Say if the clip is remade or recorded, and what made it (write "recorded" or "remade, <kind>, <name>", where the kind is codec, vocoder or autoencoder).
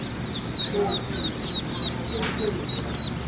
recorded